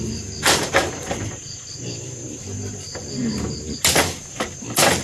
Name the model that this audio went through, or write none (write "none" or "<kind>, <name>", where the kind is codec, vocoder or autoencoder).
none